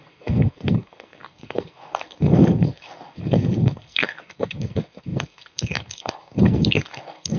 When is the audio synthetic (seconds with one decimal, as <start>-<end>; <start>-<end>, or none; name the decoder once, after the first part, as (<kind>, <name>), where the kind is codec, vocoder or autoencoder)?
0.0-7.4 (codec, SNAC)